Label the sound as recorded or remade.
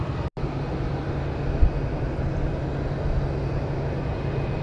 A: recorded